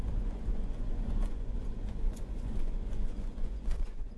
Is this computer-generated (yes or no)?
yes